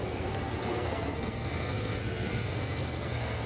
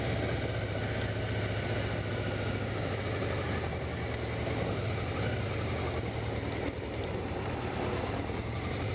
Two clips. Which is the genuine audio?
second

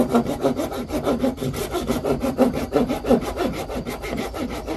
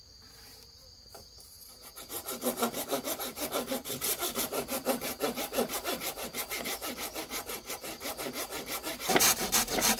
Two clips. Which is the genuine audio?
first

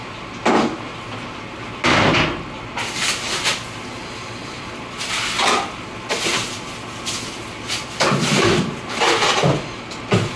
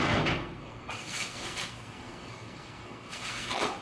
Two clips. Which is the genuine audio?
first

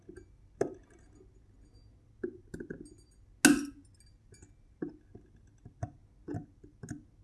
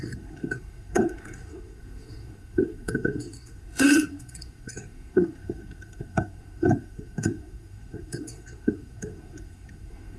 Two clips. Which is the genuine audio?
first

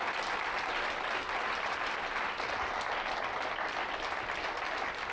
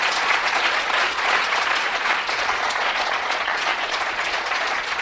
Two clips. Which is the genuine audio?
first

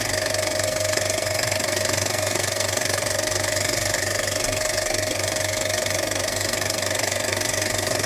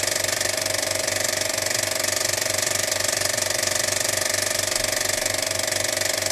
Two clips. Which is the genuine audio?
second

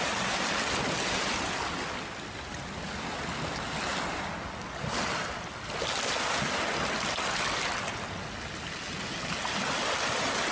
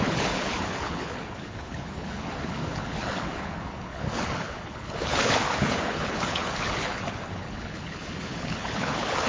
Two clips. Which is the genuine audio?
first